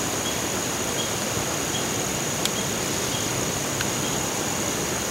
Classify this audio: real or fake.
real